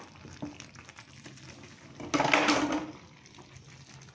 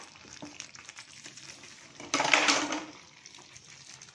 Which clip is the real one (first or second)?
first